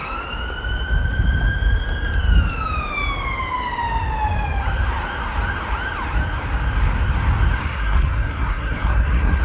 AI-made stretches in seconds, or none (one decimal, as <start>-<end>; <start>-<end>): 7.6-9.4